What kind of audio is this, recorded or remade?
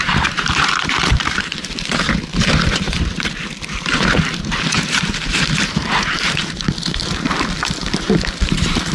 remade